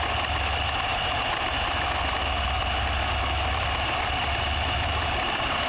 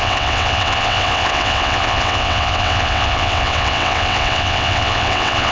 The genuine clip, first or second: first